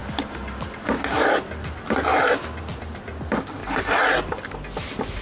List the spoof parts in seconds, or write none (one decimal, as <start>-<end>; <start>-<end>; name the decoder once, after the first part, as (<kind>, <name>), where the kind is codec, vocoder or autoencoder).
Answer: 3.6-4.3 (vocoder, BigVGAN v2)